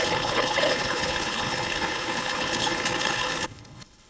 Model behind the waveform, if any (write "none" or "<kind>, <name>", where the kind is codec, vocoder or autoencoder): codec, HILCodec